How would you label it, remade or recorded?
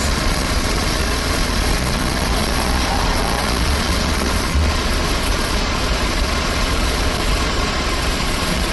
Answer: remade